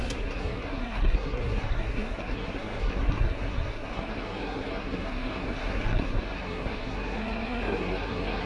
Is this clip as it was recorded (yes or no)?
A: no